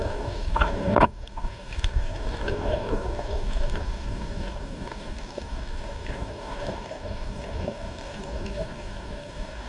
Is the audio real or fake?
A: fake